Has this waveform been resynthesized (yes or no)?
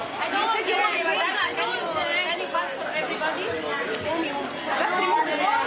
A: no